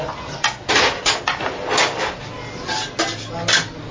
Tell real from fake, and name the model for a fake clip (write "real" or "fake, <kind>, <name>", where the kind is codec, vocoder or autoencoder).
real